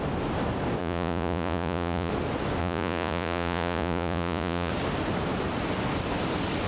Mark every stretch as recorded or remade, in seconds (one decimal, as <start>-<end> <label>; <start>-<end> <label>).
0.0-0.8 recorded; 0.8-2.1 remade; 2.1-2.6 recorded; 2.6-4.7 remade; 4.7-6.7 recorded